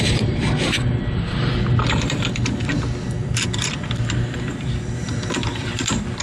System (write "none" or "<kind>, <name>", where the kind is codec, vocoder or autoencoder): vocoder, BigVGAN v2